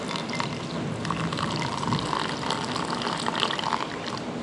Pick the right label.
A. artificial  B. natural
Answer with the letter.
B